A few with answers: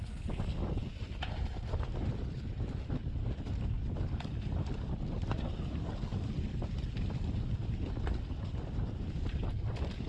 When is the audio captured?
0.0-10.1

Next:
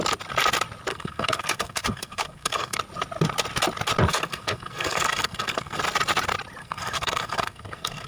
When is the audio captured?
0.0-0.9; 2.8-4.1; 5.8-6.6

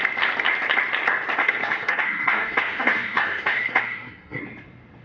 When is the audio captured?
0.0-1.4; 4.4-5.0

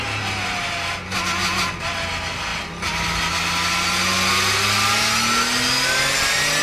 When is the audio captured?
0.0-6.6

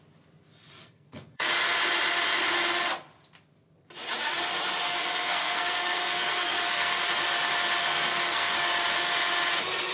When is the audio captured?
0.0-0.8; 1.5-4.8; 7.0-7.8; 8.5-9.9

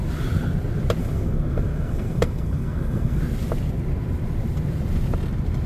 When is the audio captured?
0.0-1.0; 3.2-5.7

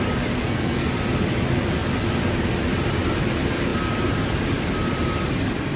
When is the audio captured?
0.0-0.4; 0.9-5.8